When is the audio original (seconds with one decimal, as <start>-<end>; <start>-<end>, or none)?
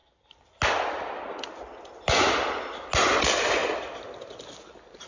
0.0-5.1